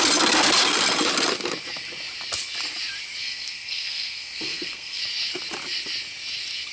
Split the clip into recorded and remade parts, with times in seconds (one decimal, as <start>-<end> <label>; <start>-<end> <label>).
0.0-3.2 recorded; 3.2-5.0 remade; 5.0-6.7 recorded